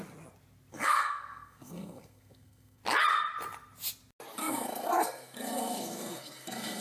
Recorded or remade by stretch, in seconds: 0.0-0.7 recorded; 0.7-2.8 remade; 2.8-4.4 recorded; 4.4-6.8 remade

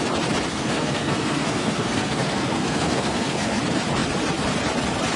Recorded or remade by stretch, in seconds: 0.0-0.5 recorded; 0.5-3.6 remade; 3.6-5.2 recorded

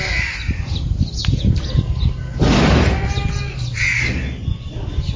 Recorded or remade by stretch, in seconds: 0.0-5.2 recorded